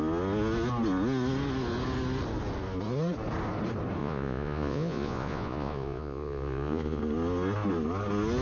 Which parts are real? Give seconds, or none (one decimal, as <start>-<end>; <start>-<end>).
0.0-4.0; 7.0-8.4